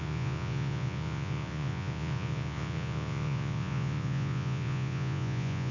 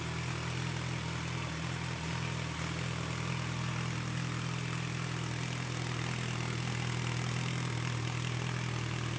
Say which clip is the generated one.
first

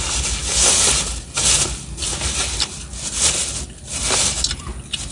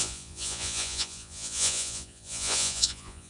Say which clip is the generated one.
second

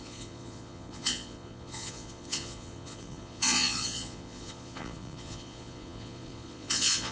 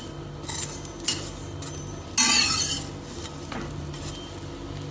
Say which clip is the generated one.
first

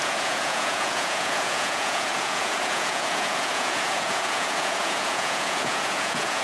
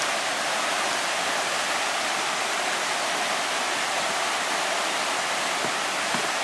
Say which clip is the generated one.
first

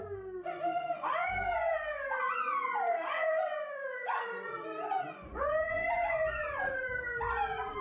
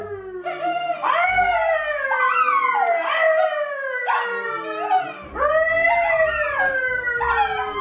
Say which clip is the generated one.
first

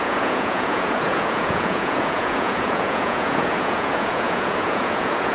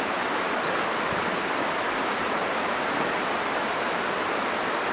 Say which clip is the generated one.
first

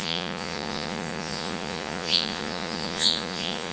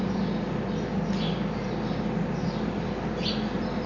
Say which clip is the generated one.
first